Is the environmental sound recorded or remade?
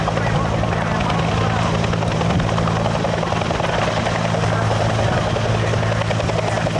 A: recorded